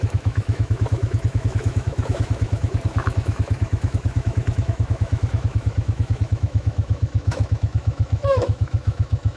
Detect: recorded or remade remade